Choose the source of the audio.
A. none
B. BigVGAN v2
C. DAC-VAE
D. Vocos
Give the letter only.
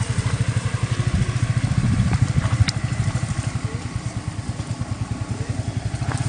B